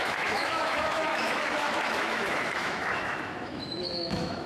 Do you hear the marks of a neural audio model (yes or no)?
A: yes